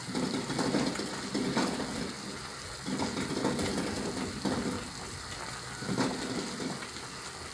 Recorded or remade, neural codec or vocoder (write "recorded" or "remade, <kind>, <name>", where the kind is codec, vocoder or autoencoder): recorded